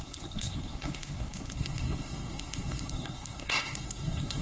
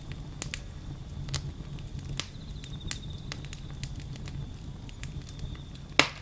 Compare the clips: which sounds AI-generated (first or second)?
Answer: first